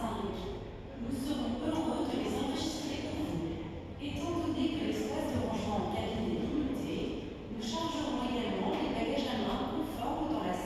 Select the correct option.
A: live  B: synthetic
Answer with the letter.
A